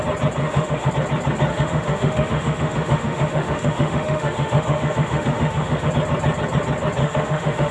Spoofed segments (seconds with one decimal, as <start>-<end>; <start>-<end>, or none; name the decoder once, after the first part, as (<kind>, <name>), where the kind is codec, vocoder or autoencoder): 0.4-0.9 (autoencoder, DAC-VAE); 1.5-5.9; 7.0-7.7